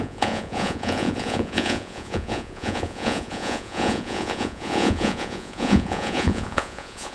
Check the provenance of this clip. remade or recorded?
remade